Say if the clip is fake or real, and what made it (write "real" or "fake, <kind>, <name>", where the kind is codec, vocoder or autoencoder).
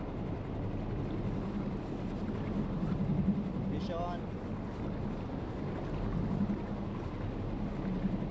real